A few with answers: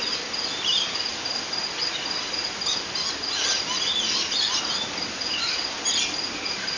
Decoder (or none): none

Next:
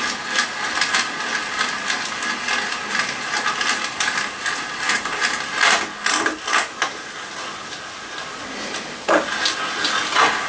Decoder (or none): none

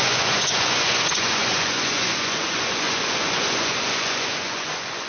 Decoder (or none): vocoder, Vocos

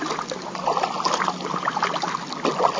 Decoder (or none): none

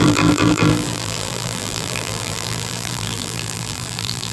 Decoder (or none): vocoder, BigVGAN v2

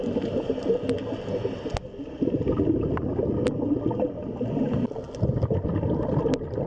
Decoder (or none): none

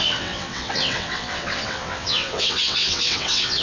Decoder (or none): vocoder, WaveNeXt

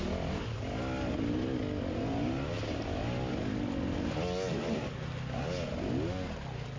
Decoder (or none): none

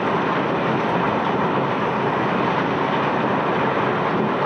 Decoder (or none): none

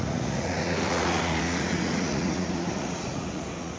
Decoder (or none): vocoder, Vocos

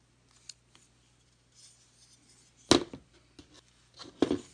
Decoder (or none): none